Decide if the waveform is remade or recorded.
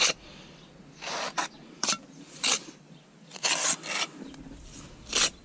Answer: recorded